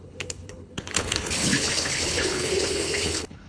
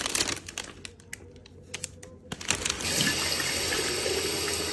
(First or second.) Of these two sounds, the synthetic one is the first